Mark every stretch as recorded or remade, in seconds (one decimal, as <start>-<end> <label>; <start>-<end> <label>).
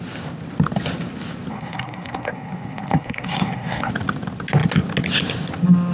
0.0-1.5 recorded; 1.5-3.9 remade; 3.9-5.9 recorded